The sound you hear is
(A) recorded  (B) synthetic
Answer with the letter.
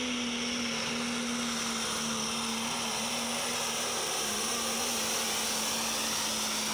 A